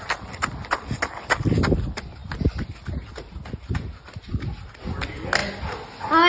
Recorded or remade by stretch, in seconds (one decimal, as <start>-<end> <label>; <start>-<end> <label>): 0.0-6.3 recorded